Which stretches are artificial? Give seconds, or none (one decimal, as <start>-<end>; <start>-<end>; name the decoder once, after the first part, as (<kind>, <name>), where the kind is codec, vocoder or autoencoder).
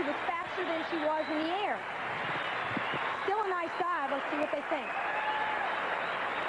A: none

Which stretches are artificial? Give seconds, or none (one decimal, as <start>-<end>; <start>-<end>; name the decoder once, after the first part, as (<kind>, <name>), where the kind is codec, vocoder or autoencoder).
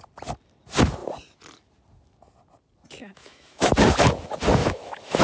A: 3.0-3.7 (autoencoder, DAC-VAE); 4.6-5.2